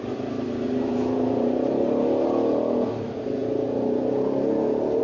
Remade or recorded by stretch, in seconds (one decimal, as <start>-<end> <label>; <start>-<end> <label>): 0.0-5.0 recorded